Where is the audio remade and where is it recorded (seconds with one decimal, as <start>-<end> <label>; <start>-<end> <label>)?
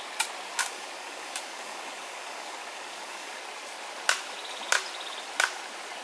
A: 0.0-0.5 recorded; 0.5-3.4 remade; 3.4-6.0 recorded